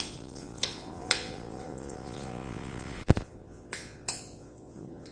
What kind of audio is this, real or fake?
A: fake